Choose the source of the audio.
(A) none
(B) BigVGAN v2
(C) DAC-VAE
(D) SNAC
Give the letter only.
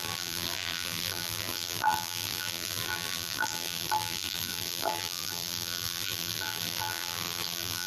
B